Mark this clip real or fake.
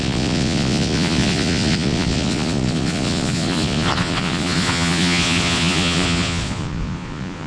fake